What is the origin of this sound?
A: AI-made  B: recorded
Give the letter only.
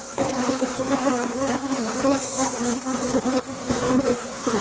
A